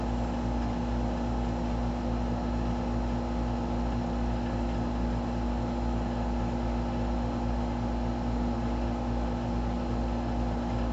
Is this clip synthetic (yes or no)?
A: no